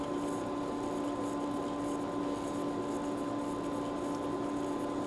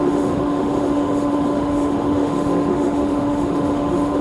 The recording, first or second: first